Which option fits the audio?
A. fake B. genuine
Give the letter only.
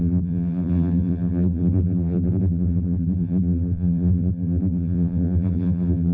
A